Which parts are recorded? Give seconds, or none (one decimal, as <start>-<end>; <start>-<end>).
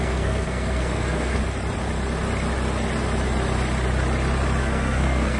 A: 1.4-4.6